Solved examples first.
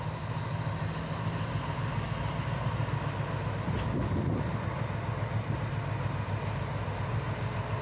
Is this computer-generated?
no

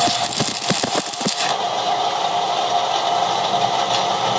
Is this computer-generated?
no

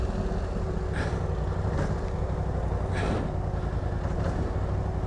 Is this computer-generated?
no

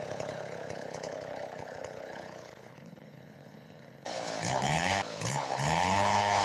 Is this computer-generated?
yes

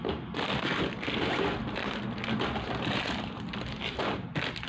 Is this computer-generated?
no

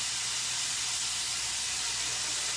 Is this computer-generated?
no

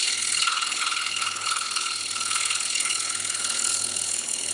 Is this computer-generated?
yes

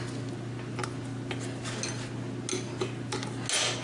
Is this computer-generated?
no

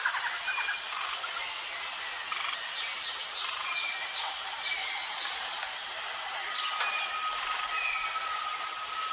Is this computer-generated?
no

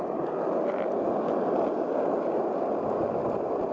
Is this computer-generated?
no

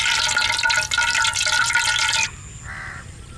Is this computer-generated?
no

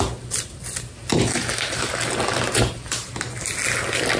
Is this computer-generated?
no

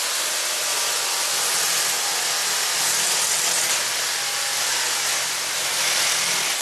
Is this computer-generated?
no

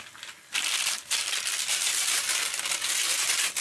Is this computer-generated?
no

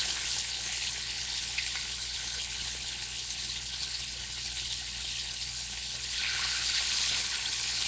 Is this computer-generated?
yes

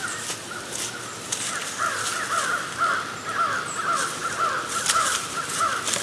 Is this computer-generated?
no